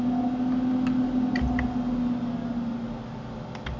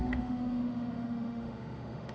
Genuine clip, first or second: first